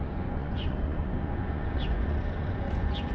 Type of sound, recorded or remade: remade